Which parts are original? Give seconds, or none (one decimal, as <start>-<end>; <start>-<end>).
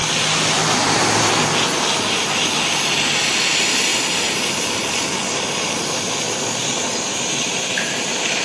0.0-3.9; 4.7-6.8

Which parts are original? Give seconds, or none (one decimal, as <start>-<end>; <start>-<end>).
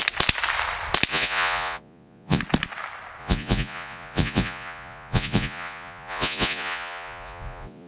0.0-1.1; 2.4-3.2